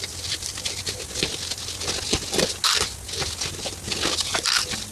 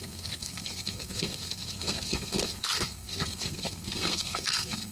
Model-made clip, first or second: second